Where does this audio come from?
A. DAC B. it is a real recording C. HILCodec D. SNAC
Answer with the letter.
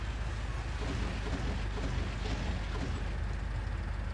B